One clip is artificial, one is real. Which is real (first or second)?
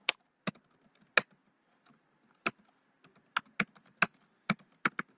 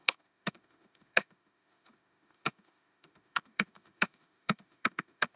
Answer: first